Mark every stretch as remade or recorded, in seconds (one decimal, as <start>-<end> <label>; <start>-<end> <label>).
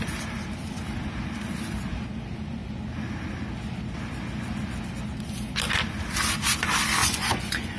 0.0-7.0 recorded; 7.0-7.8 remade